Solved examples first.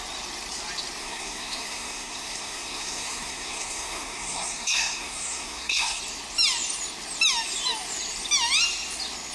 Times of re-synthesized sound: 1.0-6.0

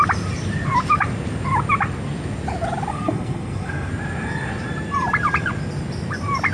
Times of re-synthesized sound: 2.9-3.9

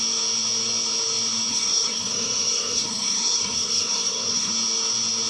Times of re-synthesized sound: 1.5-4.5

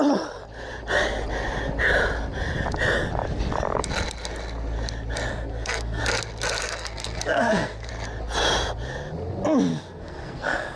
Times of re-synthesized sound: 5.3-6.0; 6.6-7.9; 9.7-10.8

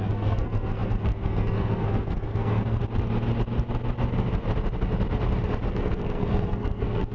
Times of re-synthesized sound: 0.0-2.8; 5.7-7.1

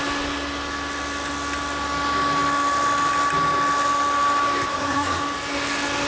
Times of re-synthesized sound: 4.7-5.2

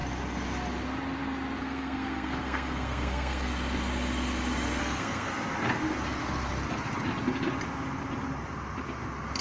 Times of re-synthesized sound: 1.6-3.5; 4.8-5.3

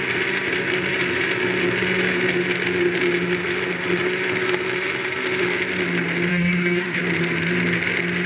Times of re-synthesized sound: 6.3-7.0